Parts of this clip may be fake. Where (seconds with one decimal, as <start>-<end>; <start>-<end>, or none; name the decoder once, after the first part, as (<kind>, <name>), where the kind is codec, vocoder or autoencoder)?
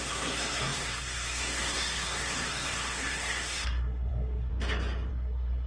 0.0-4.5 (codec, SNAC); 5.1-5.7